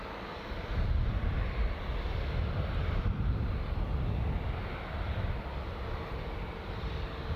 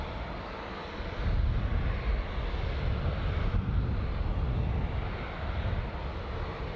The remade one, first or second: first